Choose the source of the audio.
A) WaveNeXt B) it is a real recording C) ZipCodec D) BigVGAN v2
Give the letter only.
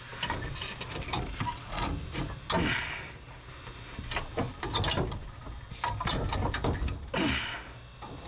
B